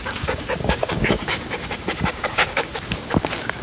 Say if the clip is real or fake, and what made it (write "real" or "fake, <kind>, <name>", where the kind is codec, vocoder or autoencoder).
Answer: fake, codec, DAC